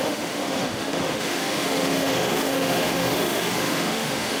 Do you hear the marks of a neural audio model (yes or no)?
yes